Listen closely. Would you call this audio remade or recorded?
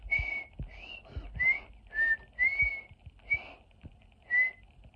recorded